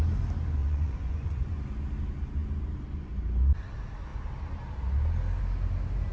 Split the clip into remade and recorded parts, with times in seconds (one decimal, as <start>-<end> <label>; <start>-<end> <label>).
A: 0.0-0.6 recorded; 0.6-1.6 remade; 1.6-6.1 recorded